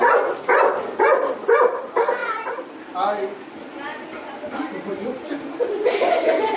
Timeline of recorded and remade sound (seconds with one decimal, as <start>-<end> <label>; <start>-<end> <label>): 0.0-6.6 recorded